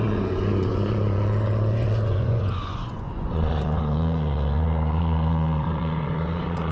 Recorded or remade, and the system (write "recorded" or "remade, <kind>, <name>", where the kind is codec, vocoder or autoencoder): remade, vocoder, Vocos